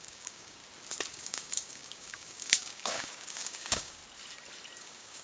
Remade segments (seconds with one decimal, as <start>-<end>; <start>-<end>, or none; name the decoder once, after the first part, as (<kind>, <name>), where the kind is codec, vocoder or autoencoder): 0.0-0.6 (codec, DAC); 1.1-4.0; 4.8-5.2